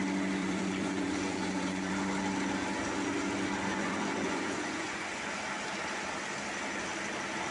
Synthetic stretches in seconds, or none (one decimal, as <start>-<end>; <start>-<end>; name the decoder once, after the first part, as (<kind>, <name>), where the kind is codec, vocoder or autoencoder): 0.4-1.9 (vocoder, Vocos); 3.7-5.4